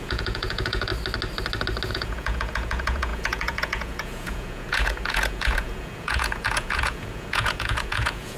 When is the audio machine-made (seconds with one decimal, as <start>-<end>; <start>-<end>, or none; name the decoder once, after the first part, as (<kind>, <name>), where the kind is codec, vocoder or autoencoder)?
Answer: 0.0-0.9 (vocoder, Vocos); 1.9-8.4